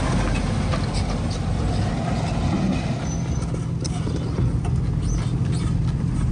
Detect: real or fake real